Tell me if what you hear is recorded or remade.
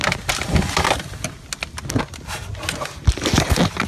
recorded